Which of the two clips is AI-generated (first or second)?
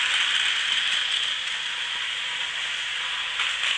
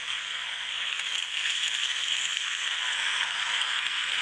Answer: second